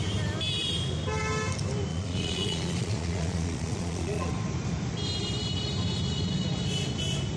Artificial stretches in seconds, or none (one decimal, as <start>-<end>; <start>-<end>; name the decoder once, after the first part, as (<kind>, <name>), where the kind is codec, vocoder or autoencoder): 1.9-4.3 (vocoder, Vocos)